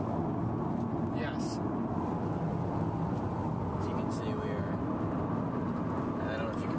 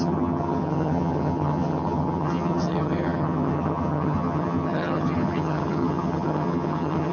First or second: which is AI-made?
second